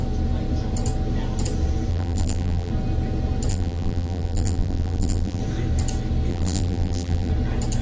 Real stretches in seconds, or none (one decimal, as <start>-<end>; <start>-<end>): 0.0-1.9; 2.7-3.5; 5.4-6.3; 7.3-7.8